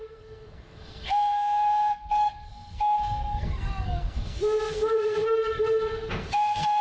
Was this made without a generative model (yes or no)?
no